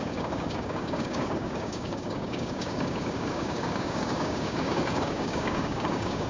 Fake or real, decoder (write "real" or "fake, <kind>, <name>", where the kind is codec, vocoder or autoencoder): fake, codec, DAC